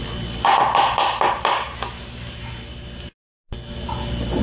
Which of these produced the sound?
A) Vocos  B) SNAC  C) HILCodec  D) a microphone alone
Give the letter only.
D